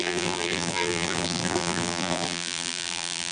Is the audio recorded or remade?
remade